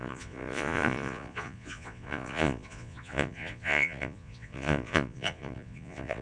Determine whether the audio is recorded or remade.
remade